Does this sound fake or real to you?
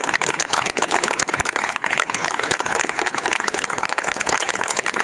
fake